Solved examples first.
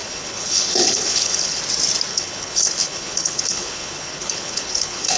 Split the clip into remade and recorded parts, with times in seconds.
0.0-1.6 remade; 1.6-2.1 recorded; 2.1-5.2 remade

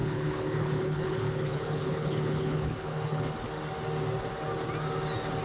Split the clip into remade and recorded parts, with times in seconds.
0.0-3.2 remade; 3.2-5.4 recorded

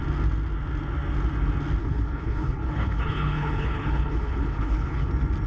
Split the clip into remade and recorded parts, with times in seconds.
0.0-1.8 recorded; 1.8-5.1 remade; 5.1-5.5 recorded

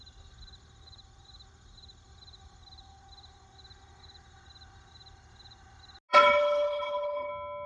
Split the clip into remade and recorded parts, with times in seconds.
0.0-6.1 recorded; 6.1-7.3 remade; 7.3-7.7 recorded

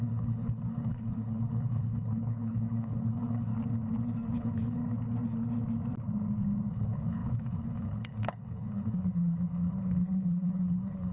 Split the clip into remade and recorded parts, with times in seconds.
0.0-3.5 remade; 3.5-4.3 recorded; 4.3-4.8 remade; 4.8-6.7 recorded; 6.7-11.1 remade

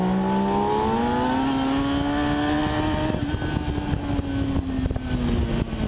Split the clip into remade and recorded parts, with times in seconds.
0.0-5.9 recorded

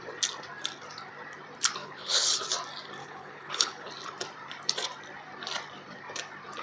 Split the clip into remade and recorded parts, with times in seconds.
0.0-1.8 recorded; 1.8-2.4 remade; 2.4-3.0 recorded; 3.0-3.9 remade; 3.9-6.6 recorded

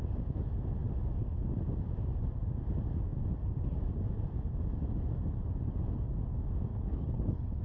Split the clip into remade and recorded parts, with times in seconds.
0.0-6.7 recorded; 6.7-7.6 remade